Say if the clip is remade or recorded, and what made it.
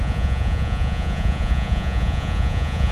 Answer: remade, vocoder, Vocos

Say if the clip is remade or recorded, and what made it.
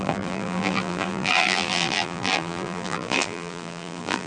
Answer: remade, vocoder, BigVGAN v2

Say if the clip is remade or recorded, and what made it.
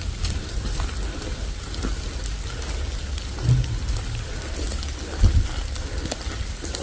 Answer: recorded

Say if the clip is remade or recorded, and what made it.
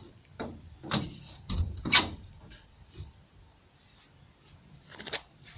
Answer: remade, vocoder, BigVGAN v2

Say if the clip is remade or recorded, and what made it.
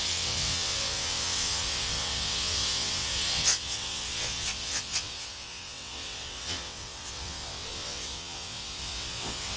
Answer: remade, vocoder, WaveNeXt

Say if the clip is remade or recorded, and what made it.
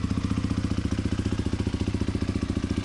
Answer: recorded